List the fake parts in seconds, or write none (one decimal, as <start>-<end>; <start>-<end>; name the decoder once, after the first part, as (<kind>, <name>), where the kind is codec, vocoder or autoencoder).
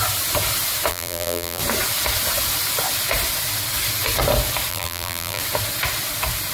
0.9-1.6 (vocoder, BigVGAN v2); 4.7-5.4